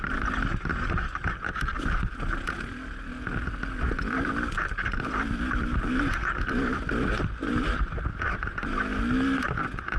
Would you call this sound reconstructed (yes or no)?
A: no